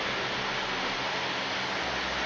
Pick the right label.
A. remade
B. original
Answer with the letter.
B